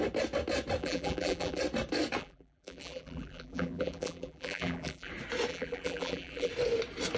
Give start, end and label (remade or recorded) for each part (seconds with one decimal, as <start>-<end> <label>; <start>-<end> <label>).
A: 0.0-0.8 recorded; 0.8-1.6 remade; 1.6-2.2 recorded; 2.2-5.1 remade; 5.1-5.5 recorded; 5.5-6.5 remade; 6.5-7.2 recorded